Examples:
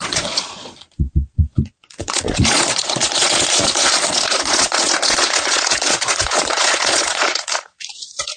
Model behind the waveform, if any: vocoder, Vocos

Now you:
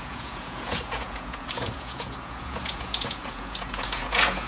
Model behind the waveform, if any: vocoder, Vocos